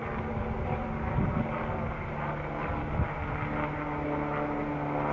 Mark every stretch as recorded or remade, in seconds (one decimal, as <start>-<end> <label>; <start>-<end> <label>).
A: 0.0-5.1 recorded